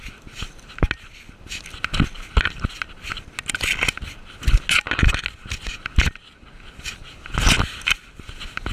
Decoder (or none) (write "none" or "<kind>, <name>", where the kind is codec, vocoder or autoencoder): none